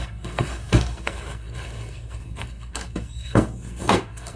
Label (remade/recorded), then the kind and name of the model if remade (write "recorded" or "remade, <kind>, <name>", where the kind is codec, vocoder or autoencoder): remade, codec, SNAC